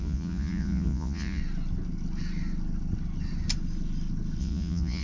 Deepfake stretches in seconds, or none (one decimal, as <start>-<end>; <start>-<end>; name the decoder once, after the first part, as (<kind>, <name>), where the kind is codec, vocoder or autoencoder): 0.0-1.4 (vocoder, Vocos); 4.4-5.0